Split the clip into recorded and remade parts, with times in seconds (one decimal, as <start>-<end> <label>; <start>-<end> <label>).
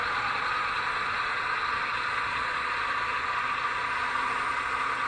0.0-3.1 remade; 3.1-5.1 recorded